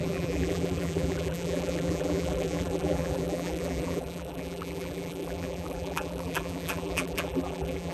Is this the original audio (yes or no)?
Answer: no